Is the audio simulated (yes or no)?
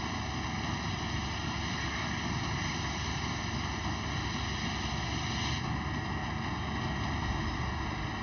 no